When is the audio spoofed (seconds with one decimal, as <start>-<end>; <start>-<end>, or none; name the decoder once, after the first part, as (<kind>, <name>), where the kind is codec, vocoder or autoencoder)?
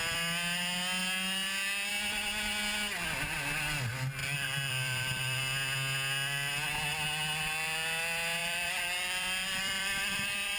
4.2-5.4 (vocoder, BigVGAN v2); 8.4-10.6